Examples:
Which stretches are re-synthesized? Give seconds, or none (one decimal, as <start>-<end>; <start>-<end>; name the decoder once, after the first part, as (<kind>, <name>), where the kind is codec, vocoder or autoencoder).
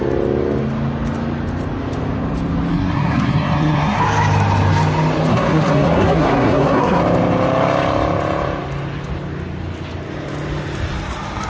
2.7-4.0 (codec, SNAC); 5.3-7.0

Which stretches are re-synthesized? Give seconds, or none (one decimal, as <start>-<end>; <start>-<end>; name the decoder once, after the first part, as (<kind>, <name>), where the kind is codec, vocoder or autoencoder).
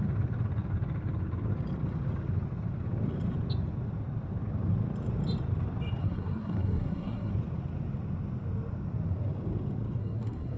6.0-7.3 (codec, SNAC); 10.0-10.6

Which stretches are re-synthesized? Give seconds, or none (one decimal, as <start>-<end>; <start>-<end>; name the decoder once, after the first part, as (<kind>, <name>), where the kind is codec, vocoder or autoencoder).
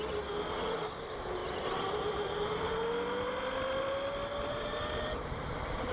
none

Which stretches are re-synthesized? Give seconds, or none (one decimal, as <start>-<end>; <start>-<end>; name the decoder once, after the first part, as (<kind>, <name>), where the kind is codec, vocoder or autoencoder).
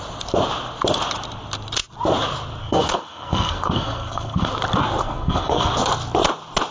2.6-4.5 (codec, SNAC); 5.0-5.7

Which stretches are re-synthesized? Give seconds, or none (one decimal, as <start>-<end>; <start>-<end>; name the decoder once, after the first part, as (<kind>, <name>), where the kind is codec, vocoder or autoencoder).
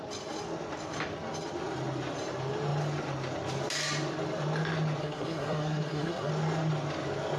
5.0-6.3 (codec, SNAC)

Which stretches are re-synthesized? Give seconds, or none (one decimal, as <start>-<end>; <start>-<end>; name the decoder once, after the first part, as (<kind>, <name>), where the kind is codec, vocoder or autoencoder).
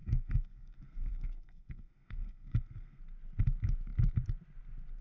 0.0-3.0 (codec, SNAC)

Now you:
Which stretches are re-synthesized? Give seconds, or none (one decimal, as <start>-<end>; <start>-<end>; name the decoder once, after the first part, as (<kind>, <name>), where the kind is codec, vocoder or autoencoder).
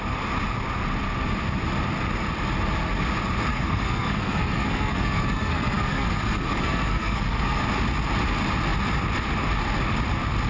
3.5-7.6 (codec, SNAC)